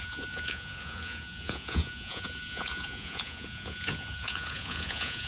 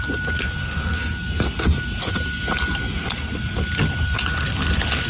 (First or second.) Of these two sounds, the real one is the second